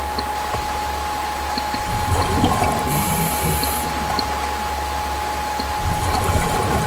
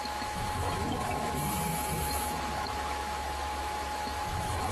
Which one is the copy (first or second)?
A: second